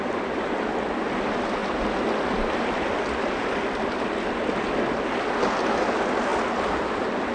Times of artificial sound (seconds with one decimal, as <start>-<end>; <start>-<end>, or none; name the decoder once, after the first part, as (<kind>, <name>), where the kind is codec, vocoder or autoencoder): none